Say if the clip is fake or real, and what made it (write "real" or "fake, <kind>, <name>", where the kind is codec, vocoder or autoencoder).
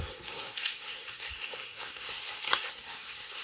fake, codec, SNAC